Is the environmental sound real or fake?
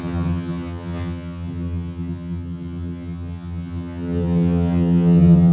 fake